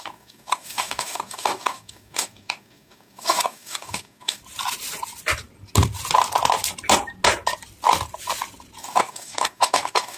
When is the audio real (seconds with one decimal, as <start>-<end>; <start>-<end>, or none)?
4.4-8.8

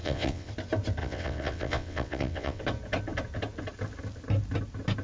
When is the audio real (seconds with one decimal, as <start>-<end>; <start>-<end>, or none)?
0.5-1.0; 2.6-5.0

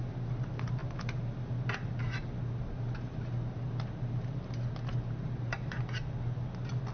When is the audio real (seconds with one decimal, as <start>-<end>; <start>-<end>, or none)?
0.0-6.9

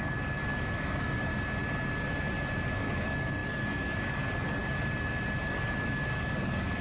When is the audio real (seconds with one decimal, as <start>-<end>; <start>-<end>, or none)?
1.3-2.8; 4.6-5.4

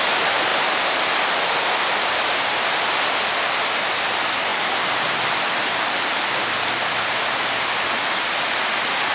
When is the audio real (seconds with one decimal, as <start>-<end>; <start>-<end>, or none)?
0.0-9.1

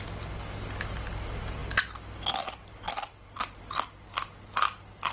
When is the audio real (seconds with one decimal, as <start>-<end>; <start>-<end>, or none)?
0.0-5.1

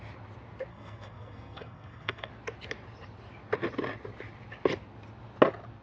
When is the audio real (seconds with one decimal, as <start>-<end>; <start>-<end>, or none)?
0.0-0.7; 2.3-5.8